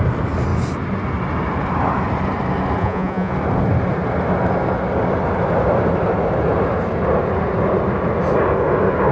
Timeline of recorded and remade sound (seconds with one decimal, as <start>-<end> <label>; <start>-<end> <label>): 0.0-2.8 recorded; 2.8-3.3 remade; 3.3-9.1 recorded